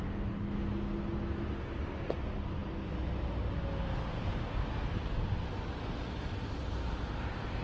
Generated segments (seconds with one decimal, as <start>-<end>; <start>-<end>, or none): none